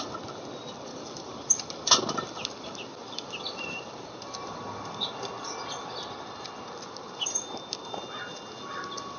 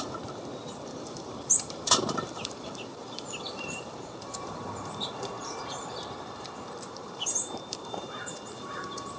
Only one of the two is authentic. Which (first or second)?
first